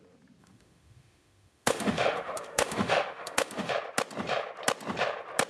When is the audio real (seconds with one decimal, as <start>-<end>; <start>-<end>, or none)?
0.0-0.4; 3.7-5.5